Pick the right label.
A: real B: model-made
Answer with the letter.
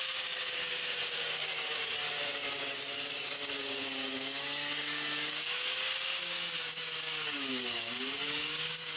B